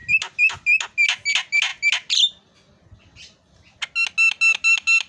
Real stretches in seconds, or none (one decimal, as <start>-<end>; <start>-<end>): 0.0-5.1